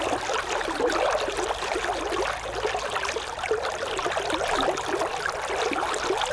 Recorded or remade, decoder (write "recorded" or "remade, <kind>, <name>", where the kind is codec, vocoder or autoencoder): recorded